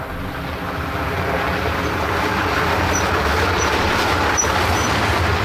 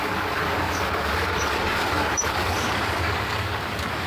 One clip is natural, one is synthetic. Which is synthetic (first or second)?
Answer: second